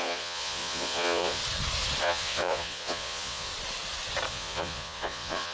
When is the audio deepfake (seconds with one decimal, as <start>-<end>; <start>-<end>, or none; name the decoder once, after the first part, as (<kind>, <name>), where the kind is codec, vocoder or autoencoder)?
0.0-1.4 (vocoder, Vocos); 2.0-3.5; 4.3-5.5